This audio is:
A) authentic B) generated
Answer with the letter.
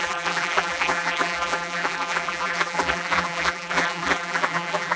B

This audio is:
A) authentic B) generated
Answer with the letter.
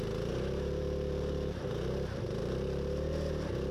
B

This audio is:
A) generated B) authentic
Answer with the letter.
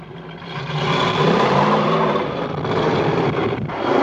A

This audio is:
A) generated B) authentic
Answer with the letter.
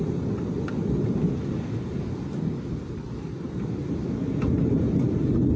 B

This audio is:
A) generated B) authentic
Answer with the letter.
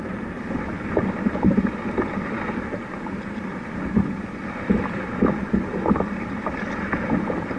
A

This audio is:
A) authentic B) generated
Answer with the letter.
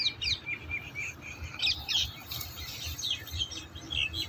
A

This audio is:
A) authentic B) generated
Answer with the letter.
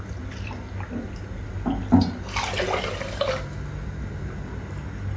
A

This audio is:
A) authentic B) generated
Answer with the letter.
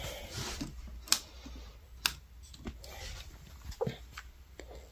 A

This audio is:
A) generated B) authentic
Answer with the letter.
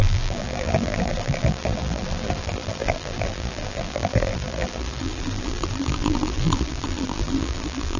A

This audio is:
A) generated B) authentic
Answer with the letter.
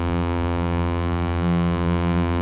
A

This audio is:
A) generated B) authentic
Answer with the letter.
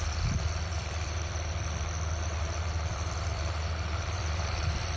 A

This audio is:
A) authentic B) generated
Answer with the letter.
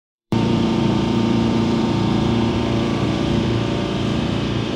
B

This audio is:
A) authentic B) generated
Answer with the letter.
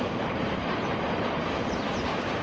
B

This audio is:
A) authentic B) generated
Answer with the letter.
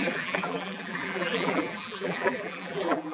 B